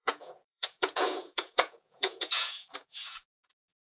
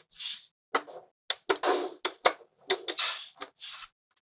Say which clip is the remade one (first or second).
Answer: first